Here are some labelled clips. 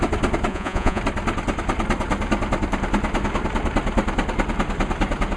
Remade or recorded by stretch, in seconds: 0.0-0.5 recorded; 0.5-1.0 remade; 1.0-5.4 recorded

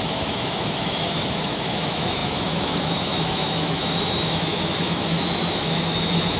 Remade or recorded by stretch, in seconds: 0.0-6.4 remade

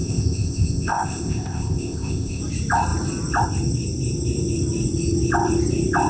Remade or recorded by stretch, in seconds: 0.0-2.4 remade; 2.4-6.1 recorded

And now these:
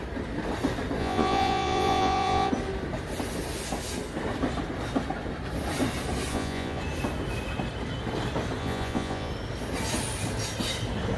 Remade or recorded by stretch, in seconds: 0.0-1.0 recorded; 1.0-2.5 remade; 2.5-6.3 recorded; 6.3-6.8 remade; 6.8-8.6 recorded; 8.6-9.3 remade; 9.3-11.2 recorded

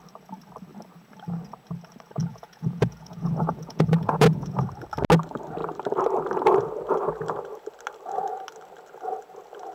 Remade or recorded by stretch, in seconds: 0.0-2.2 recorded; 2.2-4.5 remade; 4.5-9.7 recorded

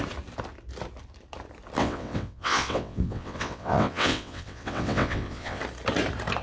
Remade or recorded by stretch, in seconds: 0.0-1.8 recorded; 1.8-5.6 remade; 5.6-6.4 recorded